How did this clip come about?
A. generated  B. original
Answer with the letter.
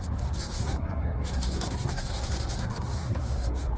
A